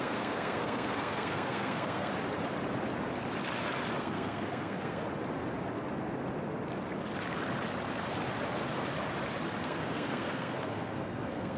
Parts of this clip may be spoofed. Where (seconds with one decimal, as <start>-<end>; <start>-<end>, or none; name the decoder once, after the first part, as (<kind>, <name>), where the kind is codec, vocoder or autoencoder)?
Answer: 0.0-2.1 (codec, SNAC); 4.0-5.0; 9.6-11.6